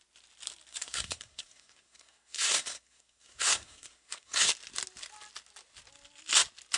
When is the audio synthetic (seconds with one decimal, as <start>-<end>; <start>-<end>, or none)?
0.7-4.5